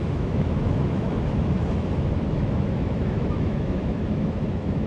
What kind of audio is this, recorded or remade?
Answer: remade